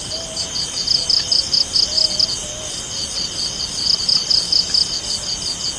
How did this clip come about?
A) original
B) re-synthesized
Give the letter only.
A